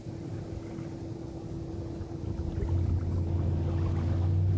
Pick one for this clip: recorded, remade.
recorded